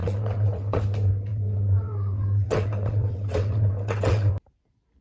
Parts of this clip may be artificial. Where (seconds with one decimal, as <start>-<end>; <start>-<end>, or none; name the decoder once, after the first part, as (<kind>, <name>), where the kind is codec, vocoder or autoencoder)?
0.0-0.8 (vocoder, WaveNeXt); 1.3-4.3